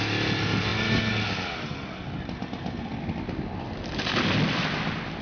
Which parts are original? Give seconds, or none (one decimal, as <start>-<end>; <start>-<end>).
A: 0.0-5.2

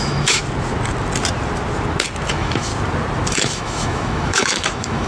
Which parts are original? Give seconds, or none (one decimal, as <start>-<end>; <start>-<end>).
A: 0.4-2.3; 2.7-3.3

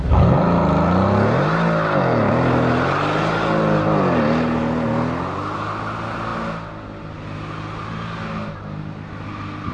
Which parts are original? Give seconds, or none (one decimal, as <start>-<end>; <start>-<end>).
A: 0.0-9.7